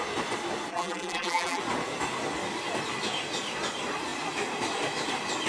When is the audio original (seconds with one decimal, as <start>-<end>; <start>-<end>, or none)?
0.0-0.7; 1.6-5.5